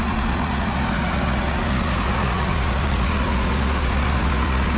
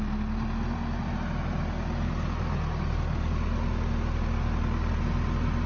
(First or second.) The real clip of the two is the second